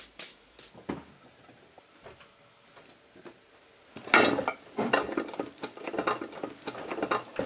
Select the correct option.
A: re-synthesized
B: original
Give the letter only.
B